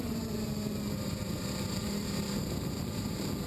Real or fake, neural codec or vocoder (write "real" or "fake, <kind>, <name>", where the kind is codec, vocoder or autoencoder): fake, vocoder, BigVGAN v2